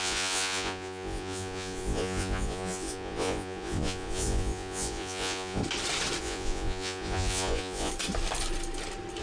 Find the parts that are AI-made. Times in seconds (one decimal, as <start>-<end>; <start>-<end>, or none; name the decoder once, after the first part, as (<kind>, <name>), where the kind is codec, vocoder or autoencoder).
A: 0.0-5.6 (vocoder, Vocos); 6.2-7.9